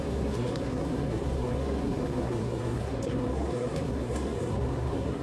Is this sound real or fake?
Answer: fake